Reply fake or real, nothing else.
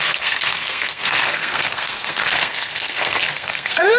fake